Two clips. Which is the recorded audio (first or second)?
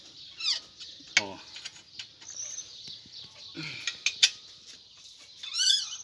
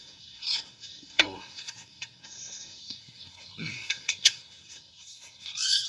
first